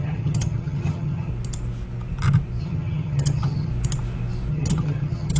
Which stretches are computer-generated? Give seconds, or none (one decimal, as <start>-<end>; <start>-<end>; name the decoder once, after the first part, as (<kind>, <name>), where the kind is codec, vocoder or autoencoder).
0.0-1.3 (vocoder, HiFi-GAN); 2.6-3.7; 4.5-5.4